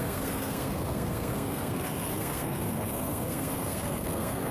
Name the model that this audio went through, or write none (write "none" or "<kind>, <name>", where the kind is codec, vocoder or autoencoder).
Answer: codec, SNAC